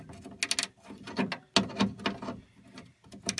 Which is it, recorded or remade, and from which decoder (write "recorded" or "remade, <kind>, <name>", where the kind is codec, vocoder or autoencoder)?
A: recorded